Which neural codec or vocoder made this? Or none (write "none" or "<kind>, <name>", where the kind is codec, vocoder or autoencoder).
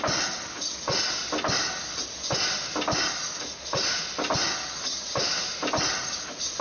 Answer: none